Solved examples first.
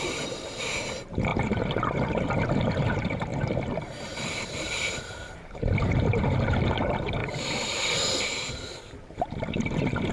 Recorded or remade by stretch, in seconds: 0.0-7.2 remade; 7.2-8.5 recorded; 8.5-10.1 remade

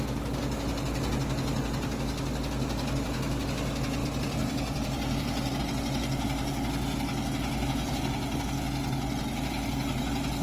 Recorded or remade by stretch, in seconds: 0.0-4.0 recorded; 4.0-5.6 remade; 5.6-10.4 recorded

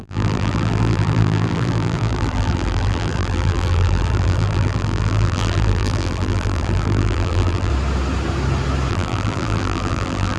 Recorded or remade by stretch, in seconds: 0.0-7.7 remade; 7.7-8.9 recorded; 8.9-10.4 remade

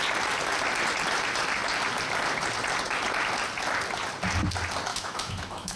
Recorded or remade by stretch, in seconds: 0.0-4.9 recorded; 4.9-5.8 remade

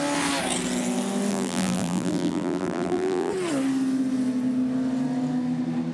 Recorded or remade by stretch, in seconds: 0.0-1.3 recorded; 1.3-3.3 remade; 3.3-5.9 recorded